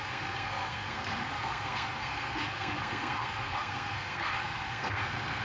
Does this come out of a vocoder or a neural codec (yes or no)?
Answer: yes